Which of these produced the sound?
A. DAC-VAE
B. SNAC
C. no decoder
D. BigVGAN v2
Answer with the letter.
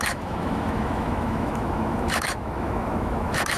A